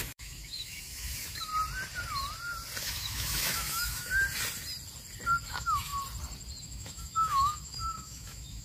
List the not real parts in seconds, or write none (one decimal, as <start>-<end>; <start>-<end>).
0.0-1.5; 2.8-4.1; 5.5-5.9; 6.6-8.6